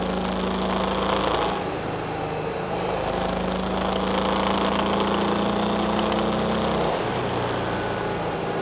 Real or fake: real